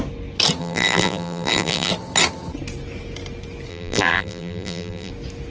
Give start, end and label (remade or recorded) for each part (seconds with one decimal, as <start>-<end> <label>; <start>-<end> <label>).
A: 0.0-0.6 recorded; 0.6-1.9 remade; 1.9-3.7 recorded; 3.7-5.1 remade; 5.1-5.5 recorded